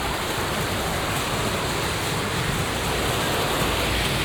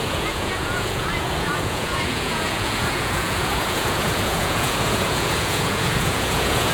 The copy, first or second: second